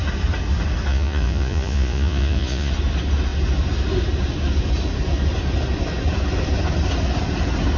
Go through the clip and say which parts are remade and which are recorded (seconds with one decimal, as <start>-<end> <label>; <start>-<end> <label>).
0.0-0.9 recorded; 0.9-2.7 remade; 2.7-7.8 recorded